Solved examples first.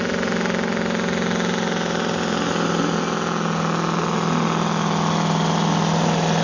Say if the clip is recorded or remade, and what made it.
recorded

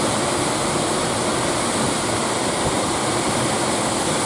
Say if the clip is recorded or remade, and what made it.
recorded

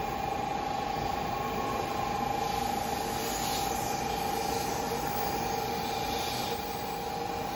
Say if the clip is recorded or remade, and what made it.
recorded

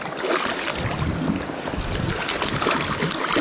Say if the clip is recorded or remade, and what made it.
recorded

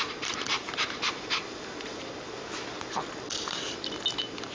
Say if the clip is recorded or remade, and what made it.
recorded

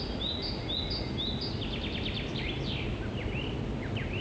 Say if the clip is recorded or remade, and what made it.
recorded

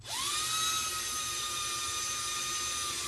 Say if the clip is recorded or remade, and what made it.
recorded